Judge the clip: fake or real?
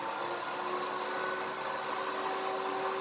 real